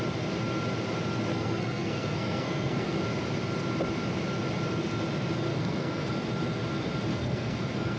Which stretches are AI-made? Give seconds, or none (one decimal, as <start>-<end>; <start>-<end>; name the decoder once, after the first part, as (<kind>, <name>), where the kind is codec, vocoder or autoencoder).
1.3-3.0 (codec, SNAC); 5.5-6.1; 7.1-8.0